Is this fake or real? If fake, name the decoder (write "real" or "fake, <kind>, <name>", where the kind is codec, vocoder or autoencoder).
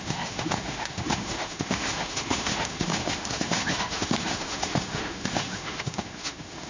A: fake, autoencoder, DAC-VAE